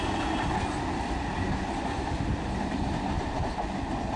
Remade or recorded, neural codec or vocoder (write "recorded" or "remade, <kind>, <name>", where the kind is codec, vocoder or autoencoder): recorded